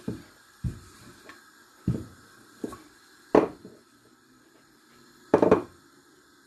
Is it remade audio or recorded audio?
remade